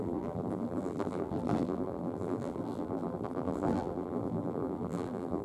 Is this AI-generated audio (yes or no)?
yes